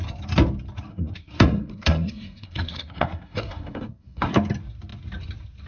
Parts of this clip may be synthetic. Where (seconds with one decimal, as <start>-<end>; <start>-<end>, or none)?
0.9-4.3